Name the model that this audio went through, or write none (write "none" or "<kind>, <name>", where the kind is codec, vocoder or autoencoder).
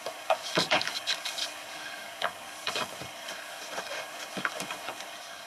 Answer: codec, DAC